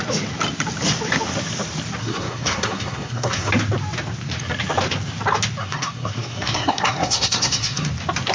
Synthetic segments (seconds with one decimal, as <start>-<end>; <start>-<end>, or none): 2.0-3.5; 5.6-7.9